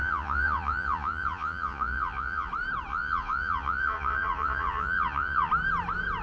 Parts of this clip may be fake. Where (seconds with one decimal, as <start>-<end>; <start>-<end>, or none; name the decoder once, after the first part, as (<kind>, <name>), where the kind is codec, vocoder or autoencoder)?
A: 0.0-2.5 (vocoder, Vocos); 2.9-5.5